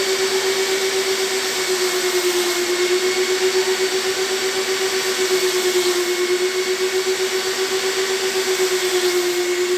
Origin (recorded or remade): recorded